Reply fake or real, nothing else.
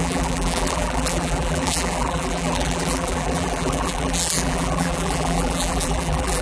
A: fake